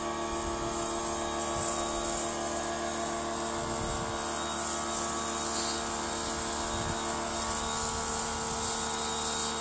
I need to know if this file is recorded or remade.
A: recorded